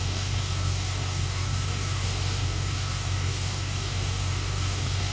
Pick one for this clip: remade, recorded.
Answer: remade